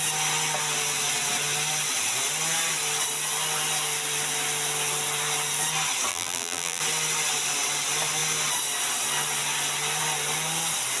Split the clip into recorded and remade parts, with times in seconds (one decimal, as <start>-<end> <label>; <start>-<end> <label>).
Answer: 0.0-6.1 recorded; 6.1-6.8 remade; 6.8-11.0 recorded